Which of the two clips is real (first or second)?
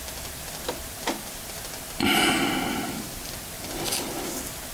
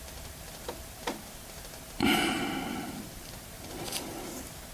first